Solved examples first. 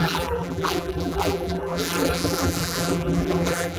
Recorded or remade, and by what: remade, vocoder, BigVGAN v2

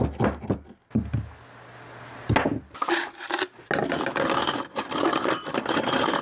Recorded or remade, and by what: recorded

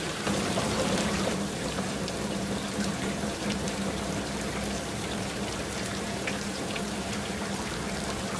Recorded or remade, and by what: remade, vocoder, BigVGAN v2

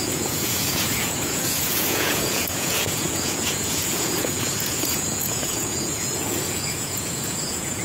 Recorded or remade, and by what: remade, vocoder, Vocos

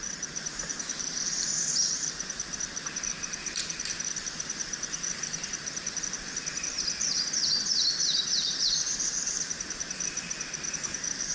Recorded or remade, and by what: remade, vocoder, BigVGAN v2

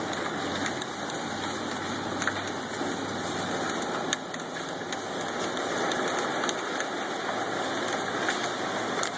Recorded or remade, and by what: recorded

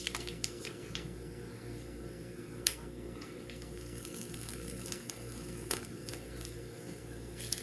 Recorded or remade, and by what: remade, codec, SNAC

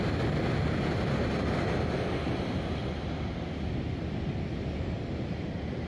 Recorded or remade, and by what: recorded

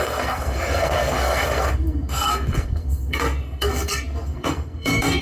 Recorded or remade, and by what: remade, codec, SNAC